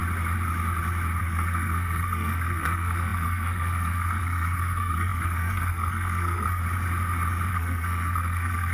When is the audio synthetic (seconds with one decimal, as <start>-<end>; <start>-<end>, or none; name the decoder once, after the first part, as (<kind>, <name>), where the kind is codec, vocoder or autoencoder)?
1.2-6.6 (codec, SNAC); 7.5-8.7